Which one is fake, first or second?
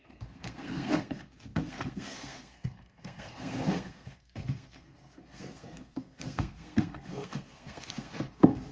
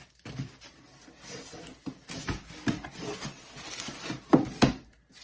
first